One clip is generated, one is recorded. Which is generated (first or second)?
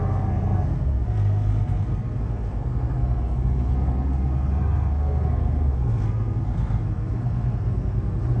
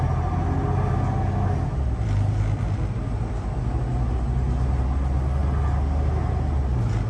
first